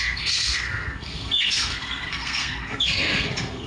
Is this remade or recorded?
remade